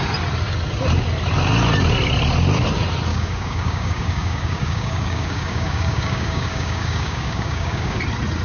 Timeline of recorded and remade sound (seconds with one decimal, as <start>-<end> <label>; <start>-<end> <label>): 0.0-3.1 recorded; 3.1-8.0 remade; 8.0-8.4 recorded